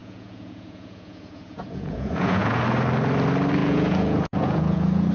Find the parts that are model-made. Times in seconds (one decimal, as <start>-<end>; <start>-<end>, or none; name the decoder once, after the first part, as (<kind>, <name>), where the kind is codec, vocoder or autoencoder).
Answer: 0.0-2.6 (vocoder, Vocos); 3.6-5.1